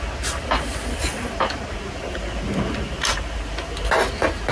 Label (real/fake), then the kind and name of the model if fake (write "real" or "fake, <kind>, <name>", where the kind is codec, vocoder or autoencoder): real